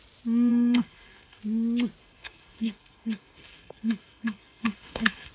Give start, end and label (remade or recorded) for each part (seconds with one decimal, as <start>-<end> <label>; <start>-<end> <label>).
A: 0.0-0.5 recorded; 0.5-1.4 remade; 1.4-2.0 recorded; 2.0-5.3 remade